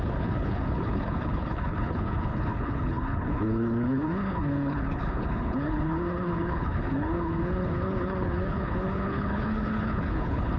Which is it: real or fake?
fake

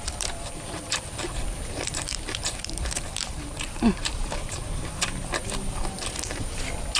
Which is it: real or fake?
fake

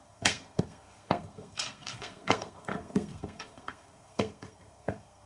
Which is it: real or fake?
fake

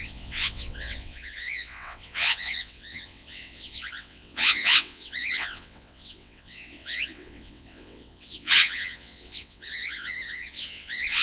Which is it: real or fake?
fake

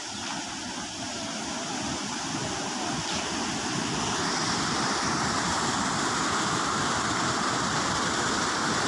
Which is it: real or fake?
real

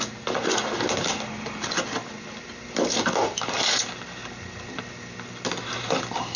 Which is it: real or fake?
real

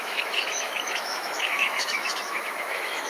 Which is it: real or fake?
fake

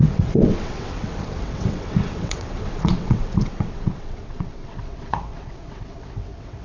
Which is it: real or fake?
fake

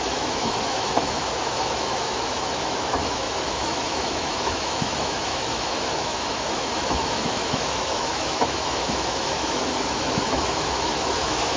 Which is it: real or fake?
fake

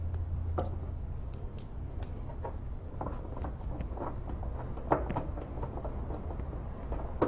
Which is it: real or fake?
real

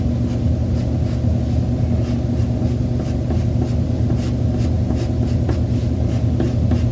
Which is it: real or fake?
real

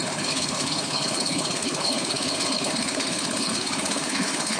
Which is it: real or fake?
fake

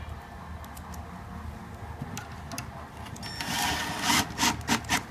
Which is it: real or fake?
real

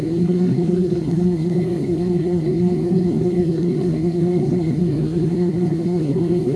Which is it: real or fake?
fake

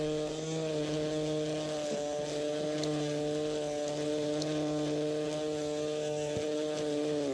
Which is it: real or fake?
real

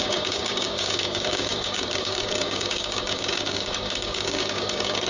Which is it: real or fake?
fake